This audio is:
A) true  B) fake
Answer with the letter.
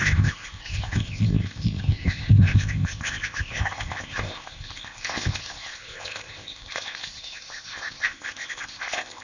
B